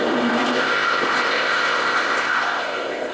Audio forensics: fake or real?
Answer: fake